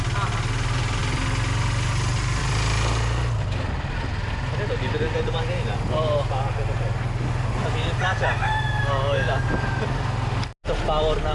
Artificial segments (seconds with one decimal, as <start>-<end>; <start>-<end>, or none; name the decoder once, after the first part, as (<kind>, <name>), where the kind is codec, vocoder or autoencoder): none